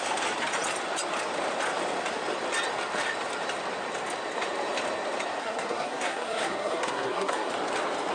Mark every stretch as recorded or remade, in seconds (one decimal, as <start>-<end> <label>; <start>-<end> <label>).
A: 0.0-5.4 recorded; 5.4-7.5 remade; 7.5-8.1 recorded